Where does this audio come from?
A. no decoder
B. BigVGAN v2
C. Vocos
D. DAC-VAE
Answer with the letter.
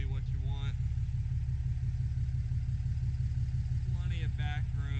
A